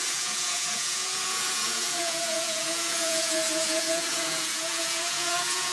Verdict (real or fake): fake